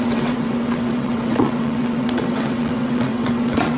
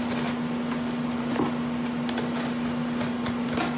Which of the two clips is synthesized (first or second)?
first